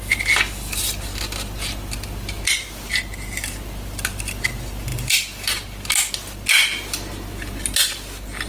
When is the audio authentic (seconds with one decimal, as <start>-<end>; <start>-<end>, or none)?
0.0-8.5